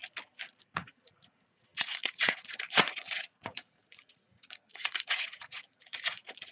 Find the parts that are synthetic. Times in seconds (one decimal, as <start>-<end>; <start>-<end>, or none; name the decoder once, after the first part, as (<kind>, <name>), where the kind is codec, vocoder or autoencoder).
0.6-6.5 (vocoder, Vocos)

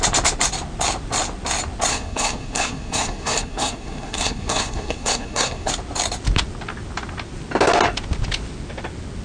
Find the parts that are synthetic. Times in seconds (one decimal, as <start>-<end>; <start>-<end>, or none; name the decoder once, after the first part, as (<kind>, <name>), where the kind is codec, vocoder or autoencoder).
1.9-5.7 (codec, SNAC)

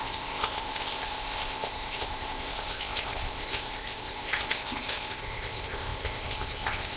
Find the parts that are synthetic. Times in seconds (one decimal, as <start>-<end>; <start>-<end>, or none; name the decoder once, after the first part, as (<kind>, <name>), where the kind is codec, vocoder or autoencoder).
0.0-7.0 (codec, ZipCodec)

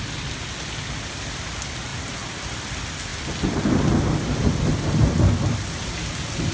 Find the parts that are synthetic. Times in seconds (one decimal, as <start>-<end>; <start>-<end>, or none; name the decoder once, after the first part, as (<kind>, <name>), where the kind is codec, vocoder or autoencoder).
none

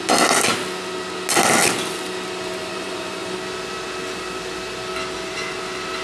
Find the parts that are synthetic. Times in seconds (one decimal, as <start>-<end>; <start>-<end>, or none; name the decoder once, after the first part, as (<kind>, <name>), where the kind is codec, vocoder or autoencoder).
2.6-3.2 (vocoder, Vocos)

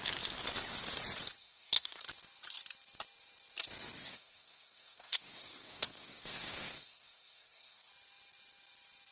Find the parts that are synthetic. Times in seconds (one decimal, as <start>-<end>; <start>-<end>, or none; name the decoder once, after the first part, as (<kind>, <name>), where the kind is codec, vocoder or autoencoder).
1.4-2.0 (codec, SNAC); 4.0-7.9

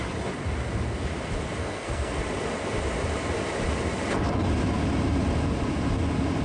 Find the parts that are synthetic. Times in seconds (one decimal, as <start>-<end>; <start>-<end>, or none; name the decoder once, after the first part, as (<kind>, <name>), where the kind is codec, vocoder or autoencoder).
1.6-2.2 (codec, SNAC)